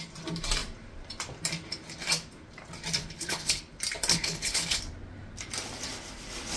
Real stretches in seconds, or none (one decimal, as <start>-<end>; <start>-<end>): 0.0-3.0; 3.6-4.1; 4.8-6.6